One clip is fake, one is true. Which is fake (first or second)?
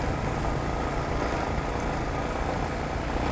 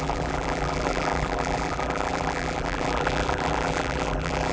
second